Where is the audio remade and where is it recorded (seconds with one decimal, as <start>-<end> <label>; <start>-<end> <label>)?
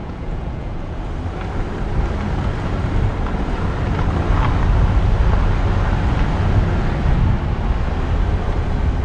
0.0-1.0 remade; 1.0-9.0 recorded